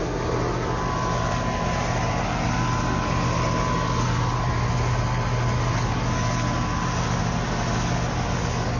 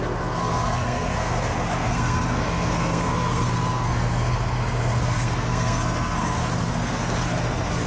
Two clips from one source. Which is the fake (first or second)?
second